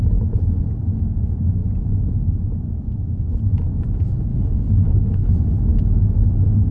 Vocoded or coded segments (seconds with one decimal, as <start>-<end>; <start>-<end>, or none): 4.3-5.3